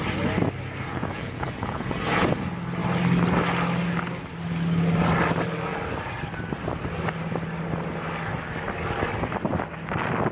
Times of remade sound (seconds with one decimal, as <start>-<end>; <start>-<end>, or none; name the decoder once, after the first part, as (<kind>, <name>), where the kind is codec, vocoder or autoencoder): 0.9-2.3 (vocoder, Vocos)